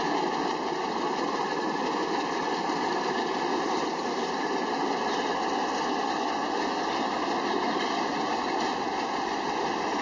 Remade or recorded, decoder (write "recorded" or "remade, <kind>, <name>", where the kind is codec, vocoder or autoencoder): recorded